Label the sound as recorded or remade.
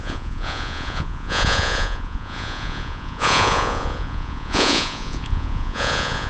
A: remade